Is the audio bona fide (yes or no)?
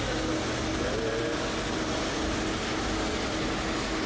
yes